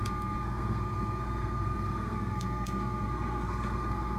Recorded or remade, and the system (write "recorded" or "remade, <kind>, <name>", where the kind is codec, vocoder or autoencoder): remade, codec, SNAC